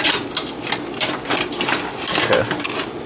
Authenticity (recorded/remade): recorded